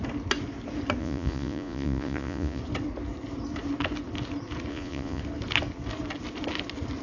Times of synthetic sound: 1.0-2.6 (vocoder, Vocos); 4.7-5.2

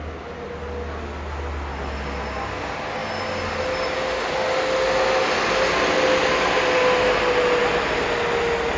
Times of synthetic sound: none

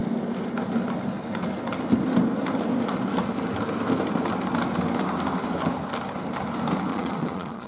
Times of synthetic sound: 6.9-7.7 (vocoder, Vocos)

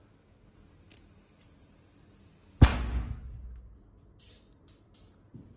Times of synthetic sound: none